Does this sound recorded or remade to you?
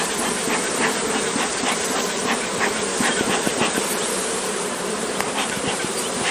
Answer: remade